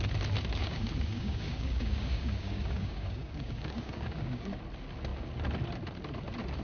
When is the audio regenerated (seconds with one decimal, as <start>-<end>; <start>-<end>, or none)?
0.6-4.6